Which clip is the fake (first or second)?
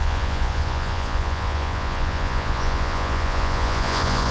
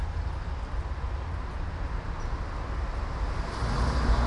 first